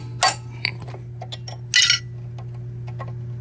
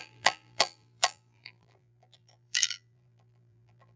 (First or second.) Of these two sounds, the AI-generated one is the second